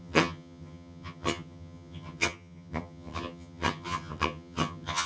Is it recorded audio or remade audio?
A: remade